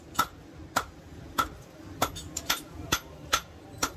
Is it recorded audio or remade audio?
recorded